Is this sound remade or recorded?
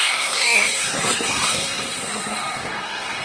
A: remade